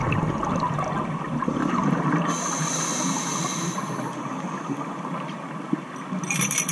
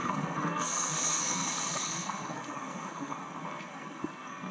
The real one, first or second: first